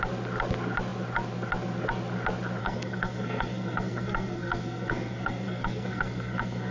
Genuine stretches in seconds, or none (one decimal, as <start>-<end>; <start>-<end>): 0.0-2.6